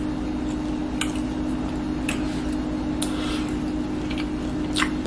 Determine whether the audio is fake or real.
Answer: real